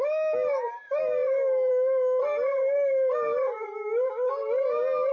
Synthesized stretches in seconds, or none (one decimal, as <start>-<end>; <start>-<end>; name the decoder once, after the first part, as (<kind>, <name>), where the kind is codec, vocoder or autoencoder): none